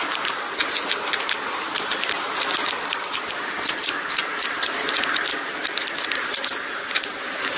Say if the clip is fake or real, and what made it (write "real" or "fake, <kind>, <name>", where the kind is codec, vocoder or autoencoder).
real